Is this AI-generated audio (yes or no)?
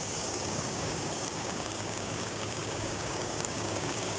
yes